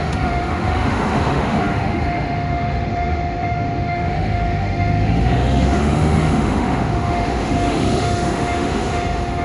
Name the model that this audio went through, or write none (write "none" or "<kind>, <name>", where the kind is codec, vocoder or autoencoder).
autoencoder, DAC-VAE